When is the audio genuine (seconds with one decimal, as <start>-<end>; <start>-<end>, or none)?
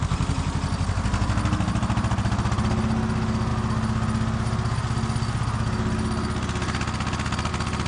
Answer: 0.0-7.9